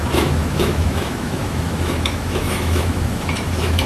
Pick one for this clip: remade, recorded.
remade